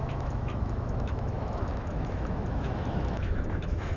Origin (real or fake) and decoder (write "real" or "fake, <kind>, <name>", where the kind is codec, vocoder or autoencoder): fake, autoencoder, DAC-VAE